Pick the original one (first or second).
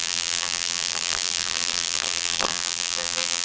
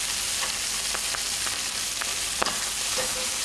second